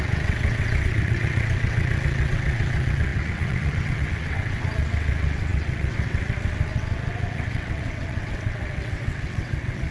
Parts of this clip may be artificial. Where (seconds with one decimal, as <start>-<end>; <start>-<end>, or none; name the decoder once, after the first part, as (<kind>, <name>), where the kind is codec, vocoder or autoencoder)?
0.0-9.9 (vocoder, WaveNeXt)